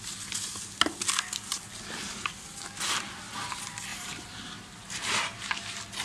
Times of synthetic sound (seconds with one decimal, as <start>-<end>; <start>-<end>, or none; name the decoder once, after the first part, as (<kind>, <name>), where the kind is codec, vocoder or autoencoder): 3.9-5.5 (vocoder, BigVGAN v2)